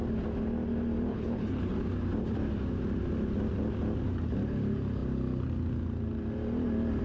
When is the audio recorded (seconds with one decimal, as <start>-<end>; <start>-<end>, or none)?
0.0-1.1; 1.7-7.0